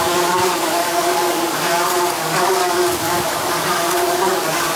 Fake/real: fake